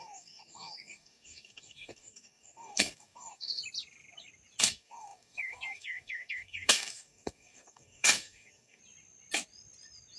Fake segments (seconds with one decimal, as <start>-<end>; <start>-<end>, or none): 0.0-3.6; 4.6-8.8

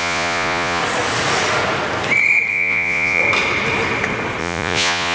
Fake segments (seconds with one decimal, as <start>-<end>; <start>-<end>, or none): 0.0-0.8; 2.5-3.2; 4.4-5.1

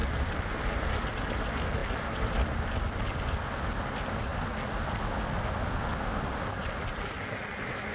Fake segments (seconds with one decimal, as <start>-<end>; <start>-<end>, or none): none

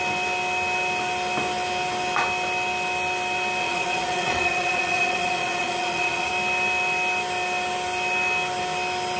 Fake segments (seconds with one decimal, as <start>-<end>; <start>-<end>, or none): 3.6-6.3

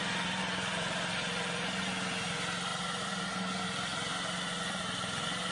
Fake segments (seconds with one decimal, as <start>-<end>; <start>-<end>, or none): none

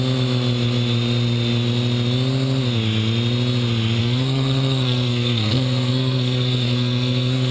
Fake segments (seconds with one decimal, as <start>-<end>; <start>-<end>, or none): 4.0-7.5